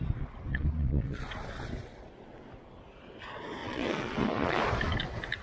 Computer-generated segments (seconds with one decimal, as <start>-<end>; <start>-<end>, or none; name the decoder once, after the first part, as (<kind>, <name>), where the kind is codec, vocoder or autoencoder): 0.5-1.4 (vocoder, Vocos); 3.6-4.6